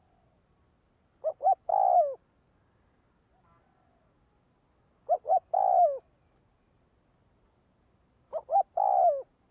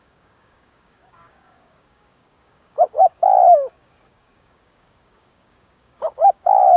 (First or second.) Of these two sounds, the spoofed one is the second